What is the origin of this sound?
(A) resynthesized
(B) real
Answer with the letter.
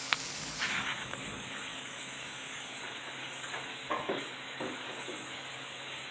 A